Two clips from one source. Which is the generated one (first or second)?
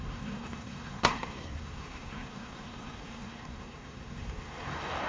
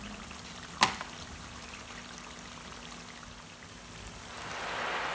first